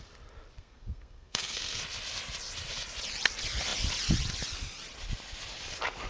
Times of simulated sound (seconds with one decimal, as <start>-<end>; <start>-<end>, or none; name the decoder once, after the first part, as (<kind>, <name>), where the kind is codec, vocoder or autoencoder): 0.6-1.8 (codec, SNAC)